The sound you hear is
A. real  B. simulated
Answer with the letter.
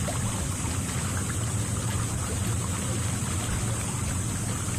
A